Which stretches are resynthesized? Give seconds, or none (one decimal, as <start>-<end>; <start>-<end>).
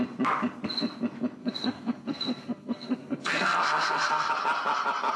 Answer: 1.4-4.3